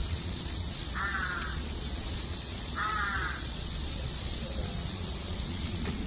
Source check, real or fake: fake